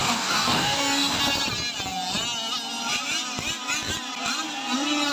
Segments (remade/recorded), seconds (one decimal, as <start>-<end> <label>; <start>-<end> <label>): 0.0-1.2 remade; 1.2-5.1 recorded